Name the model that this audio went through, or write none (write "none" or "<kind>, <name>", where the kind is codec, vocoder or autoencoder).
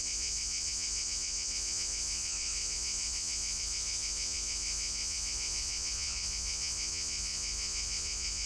vocoder, Vocos